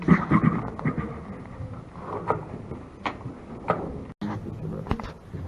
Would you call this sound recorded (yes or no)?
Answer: yes